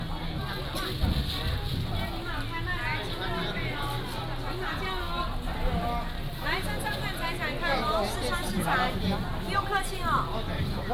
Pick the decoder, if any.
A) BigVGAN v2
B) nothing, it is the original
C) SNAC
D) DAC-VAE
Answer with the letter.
B